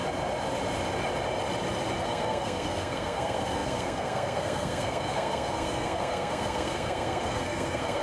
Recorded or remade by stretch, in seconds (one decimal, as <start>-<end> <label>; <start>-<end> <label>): 0.0-2.0 recorded; 2.0-8.0 remade